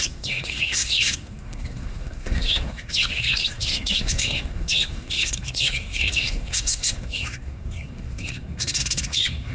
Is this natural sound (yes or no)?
no